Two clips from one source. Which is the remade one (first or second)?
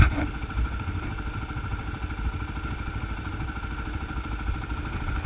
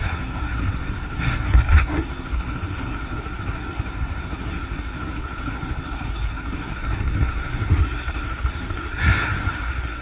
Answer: second